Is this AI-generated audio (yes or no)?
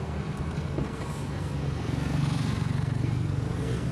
yes